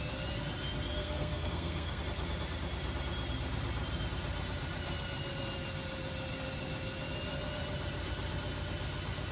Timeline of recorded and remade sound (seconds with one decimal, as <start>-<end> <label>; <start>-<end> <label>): 0.0-1.0 recorded; 1.0-2.0 remade; 2.0-9.3 recorded